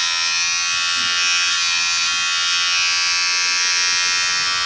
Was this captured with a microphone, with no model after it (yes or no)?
yes